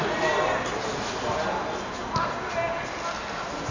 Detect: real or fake real